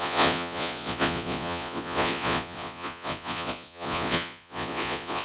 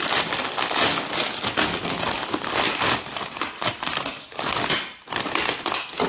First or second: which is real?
second